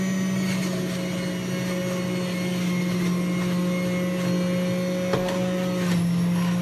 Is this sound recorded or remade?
recorded